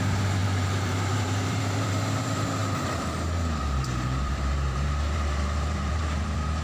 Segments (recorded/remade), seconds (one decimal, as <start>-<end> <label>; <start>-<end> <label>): 0.0-6.6 remade